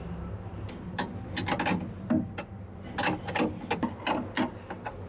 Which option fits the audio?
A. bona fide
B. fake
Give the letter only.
A